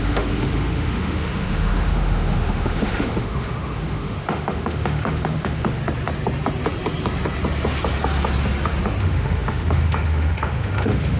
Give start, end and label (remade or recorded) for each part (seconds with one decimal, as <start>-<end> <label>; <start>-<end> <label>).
0.0-5.8 remade; 5.8-9.0 recorded; 9.0-11.2 remade

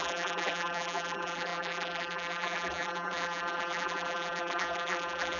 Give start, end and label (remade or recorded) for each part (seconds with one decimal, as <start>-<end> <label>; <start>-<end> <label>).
0.0-5.4 remade

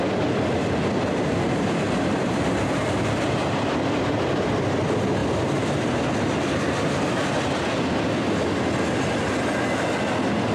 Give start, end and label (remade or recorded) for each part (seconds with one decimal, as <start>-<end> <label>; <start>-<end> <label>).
0.0-10.5 recorded

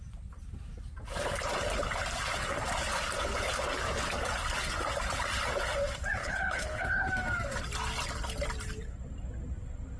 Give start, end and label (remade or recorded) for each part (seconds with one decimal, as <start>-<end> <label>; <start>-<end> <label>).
0.0-6.2 recorded; 6.2-7.1 remade; 7.1-10.0 recorded

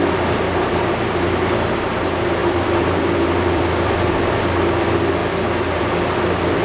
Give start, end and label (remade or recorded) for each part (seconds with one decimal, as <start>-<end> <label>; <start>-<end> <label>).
0.0-2.4 recorded; 2.4-4.3 remade; 4.3-6.6 recorded

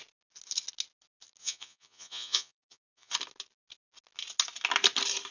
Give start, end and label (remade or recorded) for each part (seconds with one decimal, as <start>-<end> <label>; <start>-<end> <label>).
0.0-1.4 recorded; 1.4-3.1 remade; 3.1-5.3 recorded

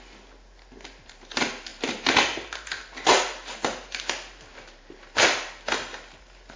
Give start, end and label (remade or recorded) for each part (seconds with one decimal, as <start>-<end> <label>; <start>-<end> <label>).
0.0-6.6 recorded

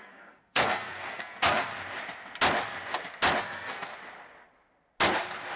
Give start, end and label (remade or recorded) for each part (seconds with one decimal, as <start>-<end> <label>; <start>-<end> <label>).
0.0-1.7 remade; 1.7-3.4 recorded; 3.4-3.9 remade; 3.9-5.6 recorded